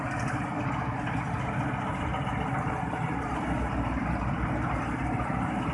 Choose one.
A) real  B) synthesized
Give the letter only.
A